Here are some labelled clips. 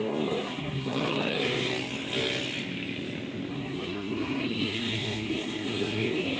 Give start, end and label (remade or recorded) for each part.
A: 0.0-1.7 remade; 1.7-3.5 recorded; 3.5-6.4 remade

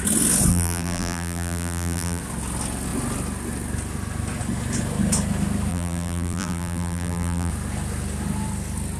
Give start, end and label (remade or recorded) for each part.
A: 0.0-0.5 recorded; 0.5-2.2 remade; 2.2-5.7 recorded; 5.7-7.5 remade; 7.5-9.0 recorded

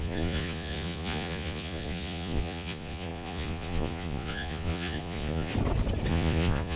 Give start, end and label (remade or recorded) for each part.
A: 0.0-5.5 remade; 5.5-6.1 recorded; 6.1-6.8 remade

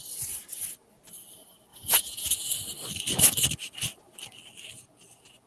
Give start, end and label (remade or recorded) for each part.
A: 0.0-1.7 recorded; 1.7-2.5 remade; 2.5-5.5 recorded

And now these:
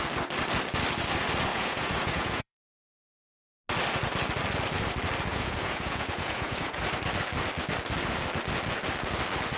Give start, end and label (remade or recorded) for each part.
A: 0.0-1.5 recorded; 1.5-2.9 remade; 2.9-5.3 recorded; 5.3-6.8 remade; 6.8-9.6 recorded